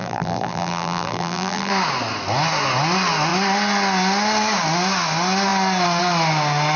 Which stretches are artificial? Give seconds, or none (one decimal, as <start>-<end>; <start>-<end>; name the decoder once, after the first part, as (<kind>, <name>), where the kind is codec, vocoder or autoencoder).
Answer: 0.0-1.7 (vocoder, BigVGAN v2)